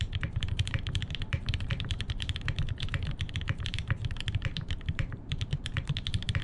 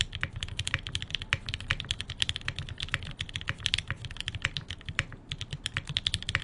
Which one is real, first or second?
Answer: second